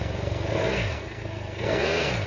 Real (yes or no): no